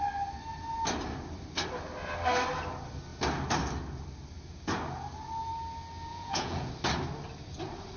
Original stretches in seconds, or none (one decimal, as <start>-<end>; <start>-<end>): 0.0-6.1; 6.7-8.0